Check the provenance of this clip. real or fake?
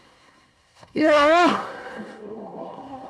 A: fake